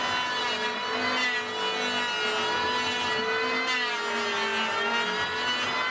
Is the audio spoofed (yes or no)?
no